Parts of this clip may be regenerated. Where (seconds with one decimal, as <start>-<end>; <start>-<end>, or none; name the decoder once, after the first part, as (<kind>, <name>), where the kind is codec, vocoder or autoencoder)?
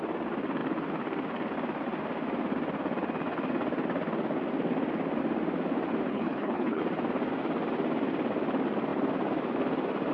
6.1-6.8 (codec, HILCodec)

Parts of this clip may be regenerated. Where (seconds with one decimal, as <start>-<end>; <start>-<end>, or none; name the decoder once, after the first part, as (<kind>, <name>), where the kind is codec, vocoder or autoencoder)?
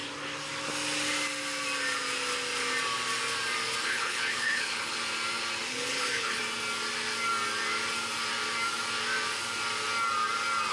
3.8-5.0 (codec, HILCodec); 5.7-6.4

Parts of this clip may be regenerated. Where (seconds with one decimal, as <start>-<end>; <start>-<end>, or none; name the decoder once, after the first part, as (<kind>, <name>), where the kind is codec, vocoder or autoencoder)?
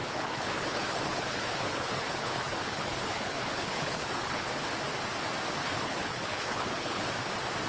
0.0-4.6 (codec, HILCodec); 5.6-7.1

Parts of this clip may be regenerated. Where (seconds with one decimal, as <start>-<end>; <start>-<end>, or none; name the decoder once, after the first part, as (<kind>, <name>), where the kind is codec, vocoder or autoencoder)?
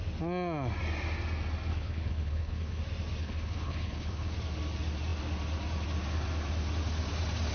1.7-2.8 (codec, HILCodec); 3.2-4.3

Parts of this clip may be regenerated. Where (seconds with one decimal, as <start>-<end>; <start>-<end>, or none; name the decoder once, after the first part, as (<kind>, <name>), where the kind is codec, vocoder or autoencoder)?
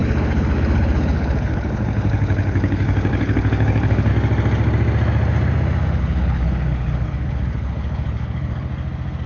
0.0-4.1 (codec, HILCodec); 6.0-8.7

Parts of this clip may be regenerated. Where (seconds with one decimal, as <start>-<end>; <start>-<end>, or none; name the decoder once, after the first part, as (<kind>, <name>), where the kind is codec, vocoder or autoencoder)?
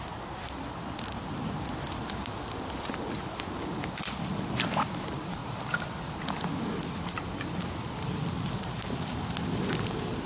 none